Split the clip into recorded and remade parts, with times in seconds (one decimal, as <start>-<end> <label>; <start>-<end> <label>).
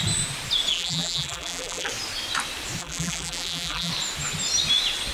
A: 0.0-0.7 recorded; 0.7-1.9 remade; 1.9-2.8 recorded; 2.8-3.9 remade; 3.9-5.1 recorded